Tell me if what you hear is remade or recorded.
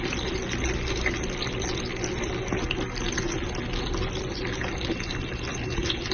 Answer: recorded